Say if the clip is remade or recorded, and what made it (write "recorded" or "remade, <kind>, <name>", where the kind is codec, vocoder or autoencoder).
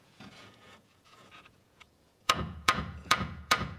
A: remade, vocoder, Vocos